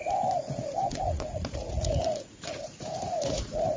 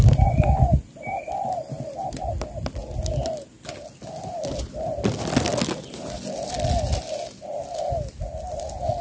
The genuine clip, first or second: second